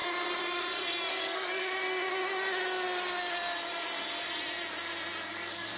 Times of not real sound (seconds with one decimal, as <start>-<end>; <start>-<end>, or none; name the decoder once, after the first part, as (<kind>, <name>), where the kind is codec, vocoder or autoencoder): 1.1-1.8 (codec, DAC); 5.3-5.8